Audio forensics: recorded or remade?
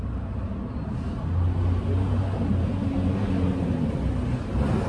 recorded